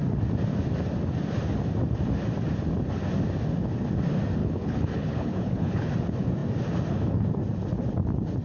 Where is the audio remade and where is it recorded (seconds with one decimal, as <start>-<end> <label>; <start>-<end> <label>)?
0.0-4.4 recorded; 4.4-5.9 remade; 5.9-8.4 recorded